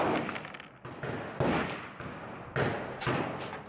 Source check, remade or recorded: recorded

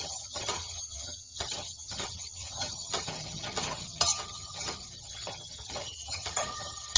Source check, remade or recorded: remade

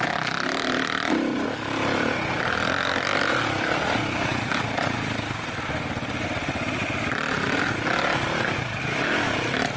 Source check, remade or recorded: recorded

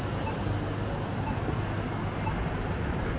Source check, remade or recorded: recorded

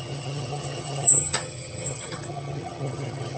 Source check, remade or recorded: remade